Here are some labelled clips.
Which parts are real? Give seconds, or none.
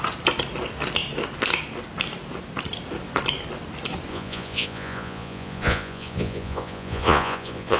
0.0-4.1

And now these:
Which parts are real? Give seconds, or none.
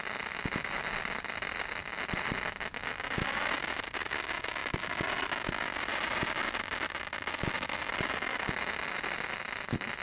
0.0-10.0